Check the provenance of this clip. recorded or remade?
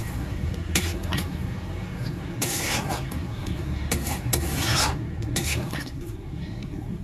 remade